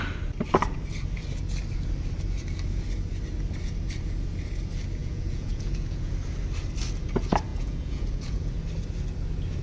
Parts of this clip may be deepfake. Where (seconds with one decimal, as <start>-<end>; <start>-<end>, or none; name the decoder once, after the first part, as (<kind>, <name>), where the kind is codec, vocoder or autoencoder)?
5.0-6.1 (vocoder, Vocos); 7.5-8.5